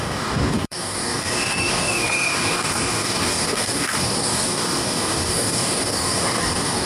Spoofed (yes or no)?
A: yes